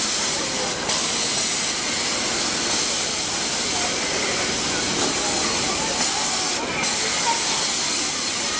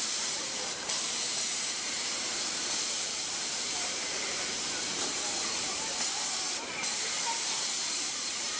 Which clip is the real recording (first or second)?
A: first